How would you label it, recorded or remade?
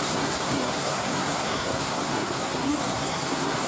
remade